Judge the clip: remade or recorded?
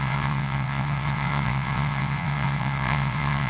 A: remade